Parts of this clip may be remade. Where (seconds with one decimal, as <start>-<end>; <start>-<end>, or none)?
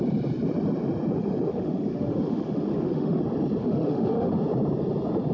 1.5-3.2; 3.6-4.3